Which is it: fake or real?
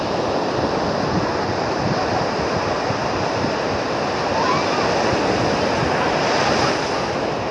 real